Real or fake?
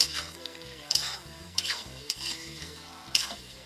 fake